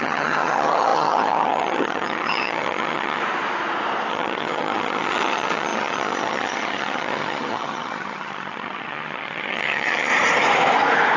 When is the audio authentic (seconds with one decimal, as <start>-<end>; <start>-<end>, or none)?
3.2-4.1; 10.1-11.2